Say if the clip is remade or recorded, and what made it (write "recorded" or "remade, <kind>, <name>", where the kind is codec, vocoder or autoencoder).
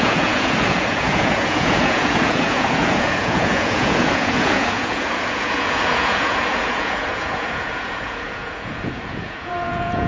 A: remade, vocoder, Vocos